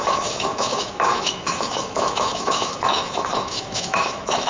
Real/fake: fake